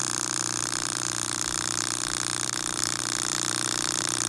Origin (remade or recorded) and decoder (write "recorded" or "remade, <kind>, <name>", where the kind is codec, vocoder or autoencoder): recorded